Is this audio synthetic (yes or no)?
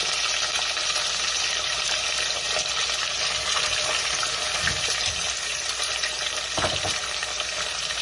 no